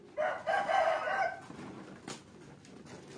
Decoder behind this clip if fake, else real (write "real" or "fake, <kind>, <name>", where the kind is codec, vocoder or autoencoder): real